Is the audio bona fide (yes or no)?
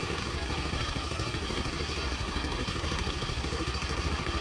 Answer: no